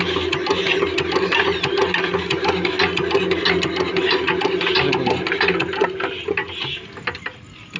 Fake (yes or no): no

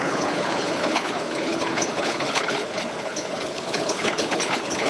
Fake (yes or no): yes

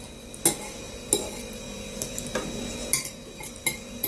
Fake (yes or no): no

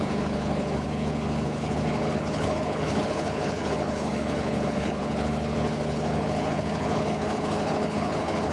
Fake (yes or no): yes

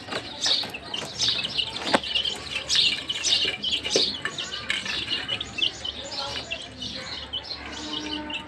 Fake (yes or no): no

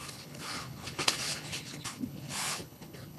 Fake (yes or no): yes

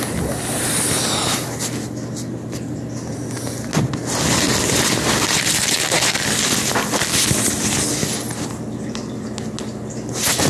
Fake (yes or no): no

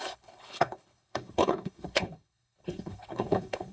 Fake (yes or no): yes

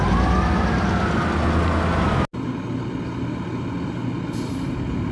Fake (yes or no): no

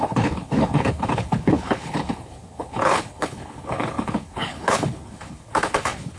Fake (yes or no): yes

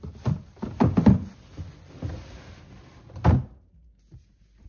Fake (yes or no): no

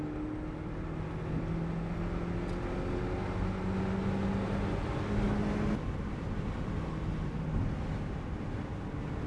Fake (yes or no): no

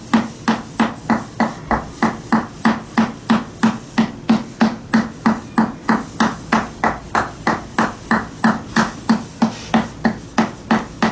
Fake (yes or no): no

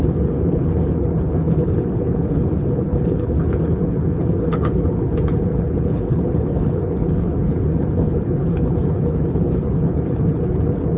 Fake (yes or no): yes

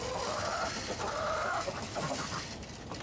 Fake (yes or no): no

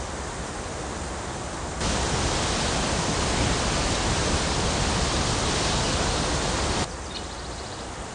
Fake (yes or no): no